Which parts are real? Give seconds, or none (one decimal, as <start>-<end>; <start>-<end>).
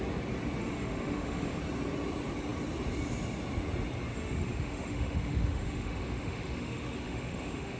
0.0-0.6; 1.6-4.1